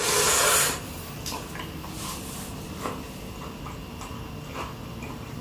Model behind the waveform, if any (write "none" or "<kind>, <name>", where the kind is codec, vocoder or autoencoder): none